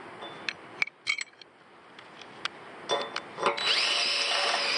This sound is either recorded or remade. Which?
recorded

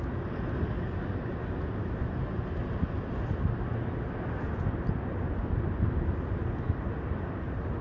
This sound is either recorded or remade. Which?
recorded